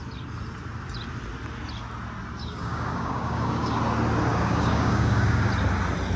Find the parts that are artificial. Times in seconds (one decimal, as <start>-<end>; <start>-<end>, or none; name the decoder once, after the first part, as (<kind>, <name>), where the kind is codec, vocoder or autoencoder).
2.4-3.8 (codec, DAC); 4.3-5.5